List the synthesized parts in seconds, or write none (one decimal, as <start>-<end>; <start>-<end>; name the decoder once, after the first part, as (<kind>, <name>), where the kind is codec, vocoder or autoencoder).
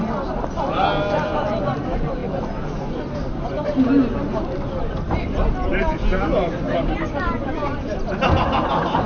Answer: none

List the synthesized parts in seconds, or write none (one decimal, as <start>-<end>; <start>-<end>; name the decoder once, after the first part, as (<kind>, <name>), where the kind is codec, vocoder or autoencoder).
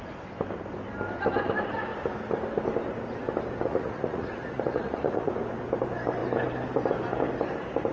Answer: 3.7-5.3 (vocoder, Vocos)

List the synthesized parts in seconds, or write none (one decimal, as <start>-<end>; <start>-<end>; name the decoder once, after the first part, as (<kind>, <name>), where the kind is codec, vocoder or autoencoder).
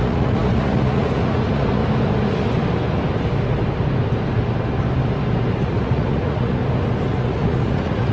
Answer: 0.0-1.8 (vocoder, Vocos); 5.6-6.6; 7.1-8.1